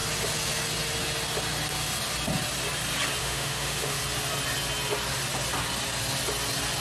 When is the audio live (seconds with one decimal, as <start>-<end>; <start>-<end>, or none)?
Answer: 0.0-3.2; 4.0-6.8